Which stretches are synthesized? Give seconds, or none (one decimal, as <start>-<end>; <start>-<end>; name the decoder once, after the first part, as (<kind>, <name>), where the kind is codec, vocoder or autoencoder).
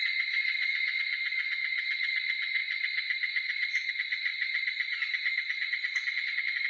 0.4-1.0 (vocoder, BigVGAN v2); 2.6-3.9; 4.3-5.0